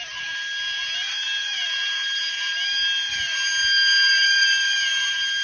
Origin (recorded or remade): recorded